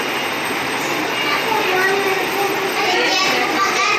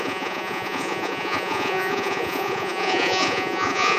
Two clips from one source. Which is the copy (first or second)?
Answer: second